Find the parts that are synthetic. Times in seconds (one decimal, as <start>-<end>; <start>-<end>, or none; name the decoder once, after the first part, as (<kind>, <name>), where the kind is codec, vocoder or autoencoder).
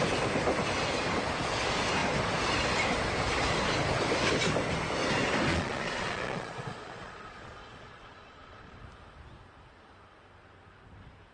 5.5-8.8 (vocoder, Vocos)